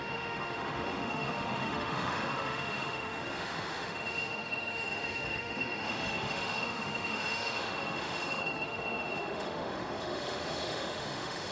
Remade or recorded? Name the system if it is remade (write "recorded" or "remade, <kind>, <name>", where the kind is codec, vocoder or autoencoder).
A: remade, autoencoder, DAC-VAE